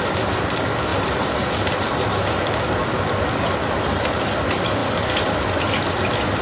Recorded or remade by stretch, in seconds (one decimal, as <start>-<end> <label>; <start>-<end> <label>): 0.0-4.8 recorded; 4.8-5.7 remade; 5.7-6.4 recorded